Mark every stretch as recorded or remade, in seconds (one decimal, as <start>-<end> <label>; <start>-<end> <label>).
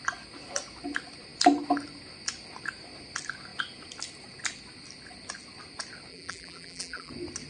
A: 0.0-6.1 recorded; 6.1-7.1 remade; 7.1-7.5 recorded